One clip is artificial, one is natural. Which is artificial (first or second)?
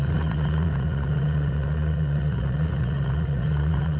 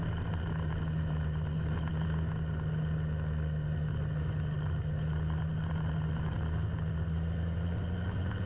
first